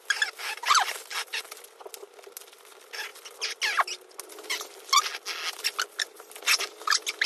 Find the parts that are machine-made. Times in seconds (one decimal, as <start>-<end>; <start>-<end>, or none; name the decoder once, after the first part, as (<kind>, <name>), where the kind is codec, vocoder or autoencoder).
none